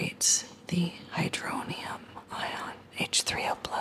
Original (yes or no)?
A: yes